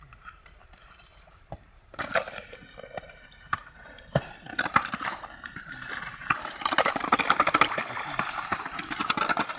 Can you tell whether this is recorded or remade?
remade